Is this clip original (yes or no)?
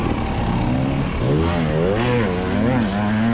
yes